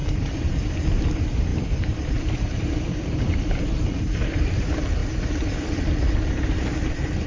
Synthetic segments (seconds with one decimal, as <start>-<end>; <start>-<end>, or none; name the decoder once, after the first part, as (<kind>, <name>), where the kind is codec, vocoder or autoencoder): 0.0-7.3 (vocoder, BigVGAN v2)